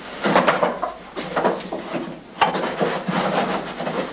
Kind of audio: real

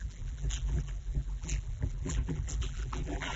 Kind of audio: fake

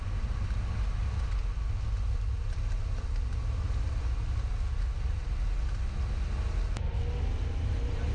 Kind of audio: real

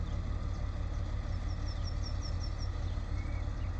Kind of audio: real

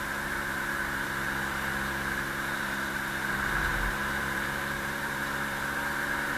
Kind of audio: fake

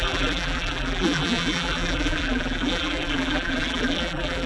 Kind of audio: fake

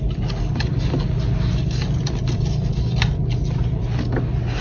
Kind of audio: real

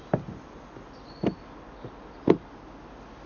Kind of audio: real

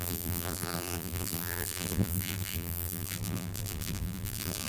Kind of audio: fake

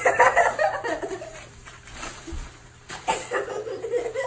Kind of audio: fake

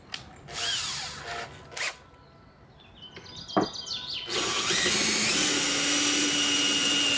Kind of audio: real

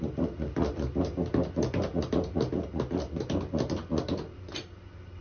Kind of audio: real